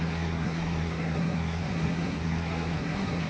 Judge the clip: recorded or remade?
remade